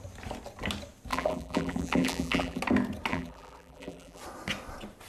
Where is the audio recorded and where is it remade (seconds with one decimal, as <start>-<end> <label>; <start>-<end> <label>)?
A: 0.0-1.1 recorded; 1.1-2.6 remade; 2.6-3.1 recorded; 3.1-4.2 remade; 4.2-5.1 recorded